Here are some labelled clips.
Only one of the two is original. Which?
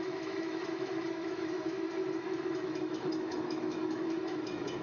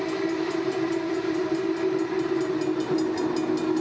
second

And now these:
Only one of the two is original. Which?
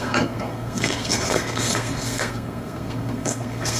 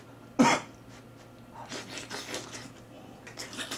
second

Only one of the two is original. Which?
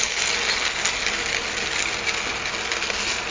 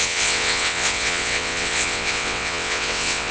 first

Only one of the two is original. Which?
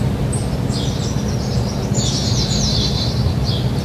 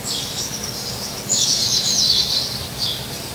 first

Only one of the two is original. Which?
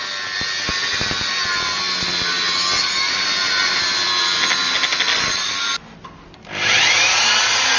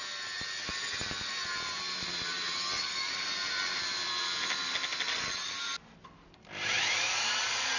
first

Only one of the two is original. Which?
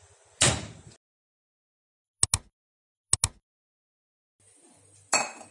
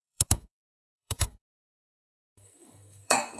first